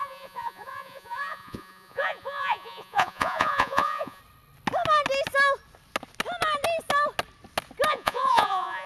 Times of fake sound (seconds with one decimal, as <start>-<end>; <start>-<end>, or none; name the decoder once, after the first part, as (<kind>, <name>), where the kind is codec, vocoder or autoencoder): 0.0-4.2 (vocoder, Vocos); 7.9-8.9